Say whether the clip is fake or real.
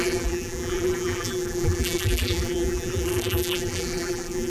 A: fake